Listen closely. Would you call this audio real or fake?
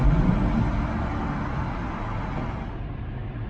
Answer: real